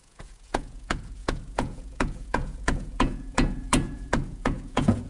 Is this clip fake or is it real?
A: fake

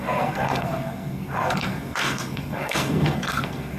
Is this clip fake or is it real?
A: fake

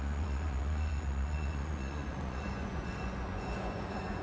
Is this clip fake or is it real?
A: fake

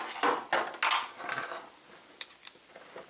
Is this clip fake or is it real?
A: real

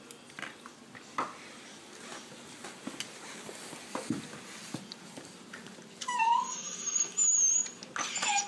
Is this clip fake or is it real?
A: real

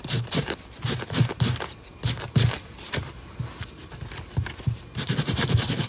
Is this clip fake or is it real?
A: fake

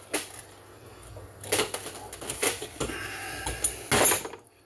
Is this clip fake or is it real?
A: real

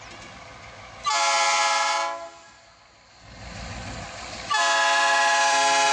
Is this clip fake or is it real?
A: real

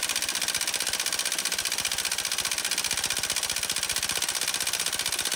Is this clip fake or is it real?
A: real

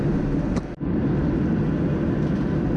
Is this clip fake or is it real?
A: real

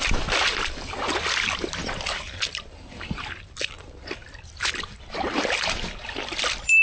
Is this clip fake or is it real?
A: fake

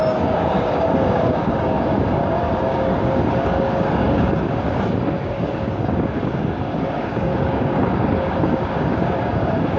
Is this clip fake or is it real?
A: fake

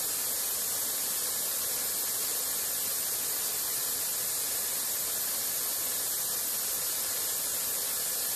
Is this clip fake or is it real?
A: real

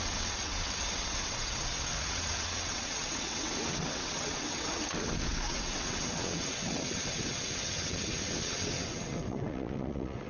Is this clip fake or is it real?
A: fake